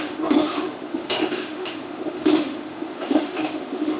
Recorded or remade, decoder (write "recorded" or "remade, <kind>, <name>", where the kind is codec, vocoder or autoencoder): remade, autoencoder, DAC-VAE